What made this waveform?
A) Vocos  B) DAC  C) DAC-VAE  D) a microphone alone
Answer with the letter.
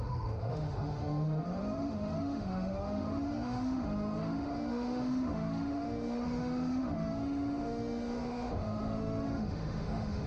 C